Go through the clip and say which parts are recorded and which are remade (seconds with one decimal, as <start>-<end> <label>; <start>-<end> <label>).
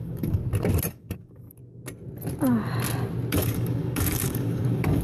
0.0-0.4 remade; 0.4-0.9 recorded; 0.9-1.6 remade; 1.6-3.3 recorded; 3.3-5.0 remade